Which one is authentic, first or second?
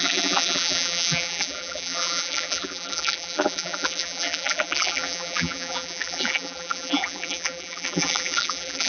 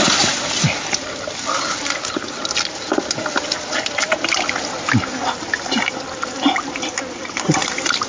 second